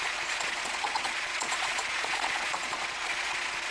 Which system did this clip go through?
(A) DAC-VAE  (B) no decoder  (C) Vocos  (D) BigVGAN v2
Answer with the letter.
C